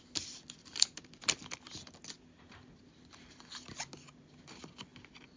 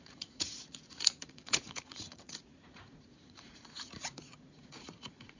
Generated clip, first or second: second